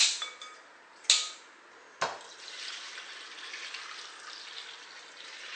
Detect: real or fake real